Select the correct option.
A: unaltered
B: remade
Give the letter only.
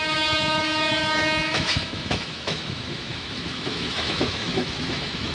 B